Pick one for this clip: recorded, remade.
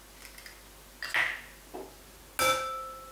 recorded